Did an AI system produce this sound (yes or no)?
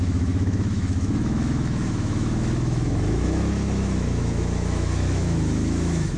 yes